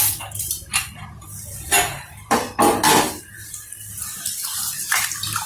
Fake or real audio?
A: real